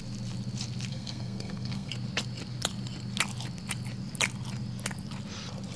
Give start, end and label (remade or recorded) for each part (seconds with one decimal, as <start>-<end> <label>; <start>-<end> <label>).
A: 0.0-0.9 recorded; 0.9-1.9 remade; 1.9-5.8 recorded